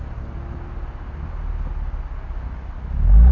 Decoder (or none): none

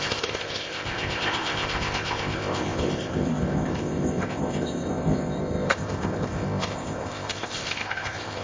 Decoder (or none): codec, ZipCodec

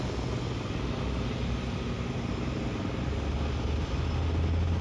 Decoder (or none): none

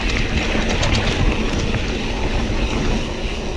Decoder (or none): none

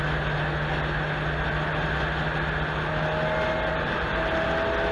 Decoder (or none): none